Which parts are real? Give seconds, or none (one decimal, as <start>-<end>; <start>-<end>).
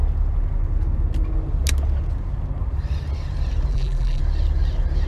0.0-3.7; 4.2-5.1